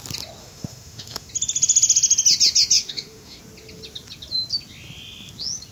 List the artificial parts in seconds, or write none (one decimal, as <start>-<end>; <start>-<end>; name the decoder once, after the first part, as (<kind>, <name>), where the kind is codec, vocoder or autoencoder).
0.4-1.3 (autoencoder, DAC-VAE); 2.8-3.4